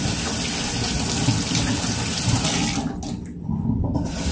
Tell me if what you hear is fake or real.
real